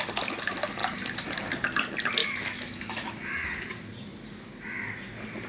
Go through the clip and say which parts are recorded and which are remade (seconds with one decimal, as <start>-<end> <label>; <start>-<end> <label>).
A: 0.0-2.2 recorded; 2.2-3.2 remade; 3.2-5.5 recorded